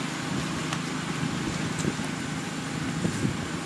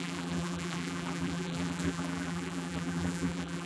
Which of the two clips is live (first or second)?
first